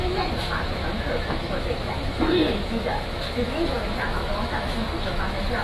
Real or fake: fake